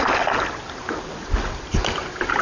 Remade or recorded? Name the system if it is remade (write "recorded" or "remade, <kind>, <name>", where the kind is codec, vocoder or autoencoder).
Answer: recorded